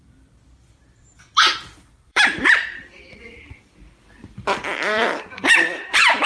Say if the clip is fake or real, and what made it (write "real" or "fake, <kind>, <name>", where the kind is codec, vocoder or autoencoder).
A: fake, vocoder, BigVGAN v2